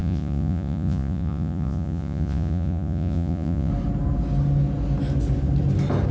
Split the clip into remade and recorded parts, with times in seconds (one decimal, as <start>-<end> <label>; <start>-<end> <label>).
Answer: 0.0-3.7 remade; 3.7-6.1 recorded